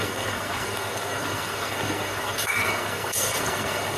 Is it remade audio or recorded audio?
remade